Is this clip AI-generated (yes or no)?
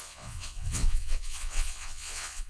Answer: yes